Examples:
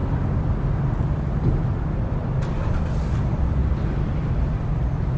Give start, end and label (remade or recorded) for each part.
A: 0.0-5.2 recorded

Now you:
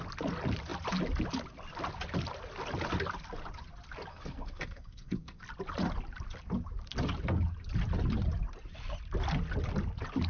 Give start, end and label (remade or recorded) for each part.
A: 0.0-4.1 recorded; 4.1-5.4 remade; 5.4-10.3 recorded

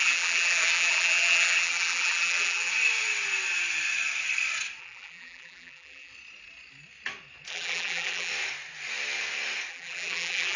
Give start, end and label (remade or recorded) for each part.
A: 0.0-2.7 remade; 2.7-4.8 recorded; 4.8-6.1 remade; 6.1-7.5 recorded; 7.5-8.3 remade; 8.3-9.7 recorded; 9.7-10.6 remade

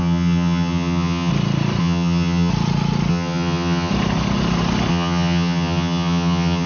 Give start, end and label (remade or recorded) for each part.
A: 0.0-1.3 remade; 1.3-1.8 recorded; 1.8-2.5 remade; 2.5-3.1 recorded; 3.1-3.9 remade; 3.9-4.9 recorded; 4.9-6.7 remade

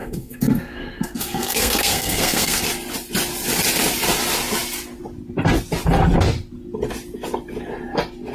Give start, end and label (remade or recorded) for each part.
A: 0.0-2.6 remade; 2.6-8.3 recorded

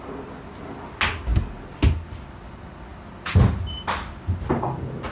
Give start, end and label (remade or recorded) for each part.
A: 0.0-5.1 recorded

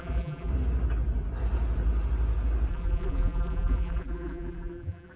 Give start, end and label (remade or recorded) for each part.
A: 0.0-0.5 remade; 0.5-2.7 recorded; 2.7-5.2 remade